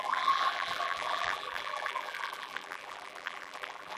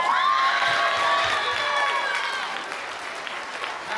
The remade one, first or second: first